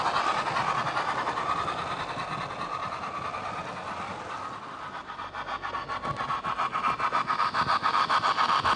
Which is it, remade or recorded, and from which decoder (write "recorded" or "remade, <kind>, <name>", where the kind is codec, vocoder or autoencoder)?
recorded